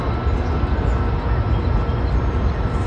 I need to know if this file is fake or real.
real